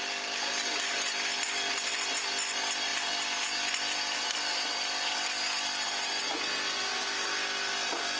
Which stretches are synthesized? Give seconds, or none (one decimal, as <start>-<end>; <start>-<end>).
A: none